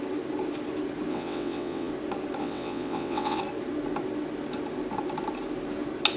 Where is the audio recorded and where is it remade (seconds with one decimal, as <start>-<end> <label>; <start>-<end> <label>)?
0.0-1.1 recorded; 1.1-1.9 remade; 1.9-2.4 recorded; 2.4-3.4 remade; 3.4-6.2 recorded